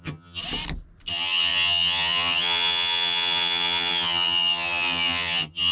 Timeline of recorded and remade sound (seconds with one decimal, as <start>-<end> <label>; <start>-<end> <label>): 0.0-0.4 remade; 0.4-1.1 recorded; 1.1-5.7 remade